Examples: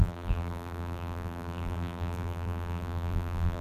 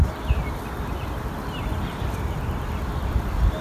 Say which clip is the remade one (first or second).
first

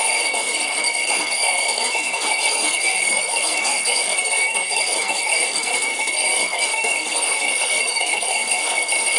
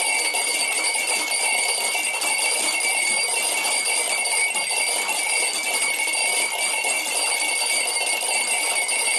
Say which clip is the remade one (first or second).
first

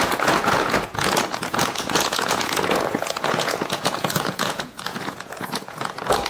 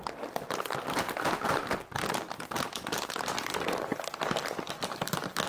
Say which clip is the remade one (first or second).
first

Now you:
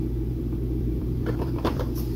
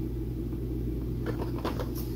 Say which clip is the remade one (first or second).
first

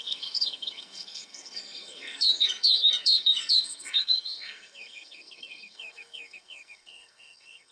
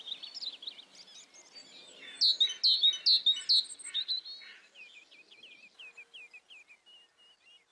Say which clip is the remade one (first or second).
first